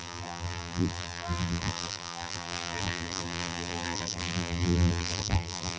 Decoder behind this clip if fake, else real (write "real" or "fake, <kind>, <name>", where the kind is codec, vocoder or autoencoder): fake, vocoder, BigVGAN v2